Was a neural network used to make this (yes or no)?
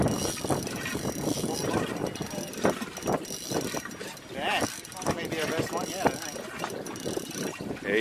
no